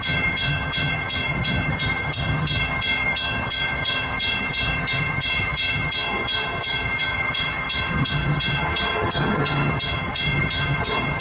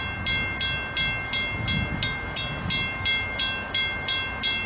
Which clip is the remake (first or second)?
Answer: first